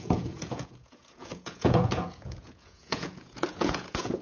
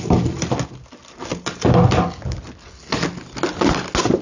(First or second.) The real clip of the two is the second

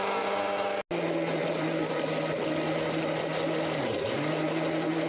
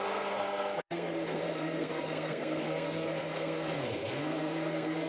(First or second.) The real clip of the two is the first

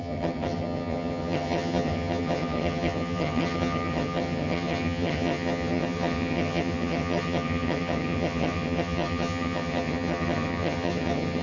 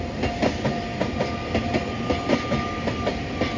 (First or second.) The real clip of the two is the second